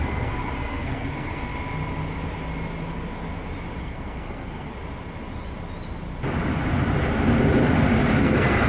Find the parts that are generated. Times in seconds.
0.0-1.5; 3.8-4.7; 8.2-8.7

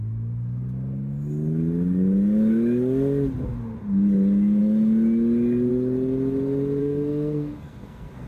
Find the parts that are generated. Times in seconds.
6.8-8.3

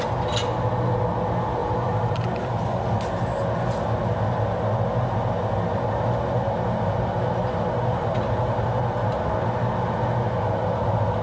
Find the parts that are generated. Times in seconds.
1.6-2.8; 7.9-8.8

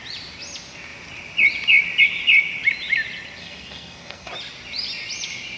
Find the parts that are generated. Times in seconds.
3.4-4.3

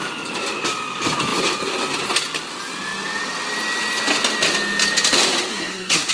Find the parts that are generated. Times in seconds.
5.5-6.1

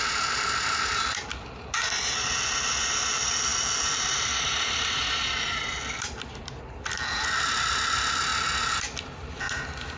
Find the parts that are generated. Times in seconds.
none